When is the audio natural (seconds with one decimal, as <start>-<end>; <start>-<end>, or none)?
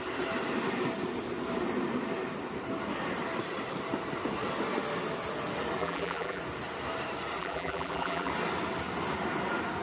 0.0-5.8; 6.4-7.4; 8.3-9.8